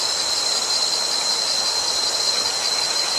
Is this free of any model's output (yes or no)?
yes